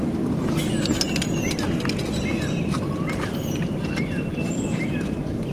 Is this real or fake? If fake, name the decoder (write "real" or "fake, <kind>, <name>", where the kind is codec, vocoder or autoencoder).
real